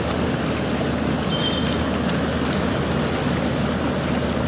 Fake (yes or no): no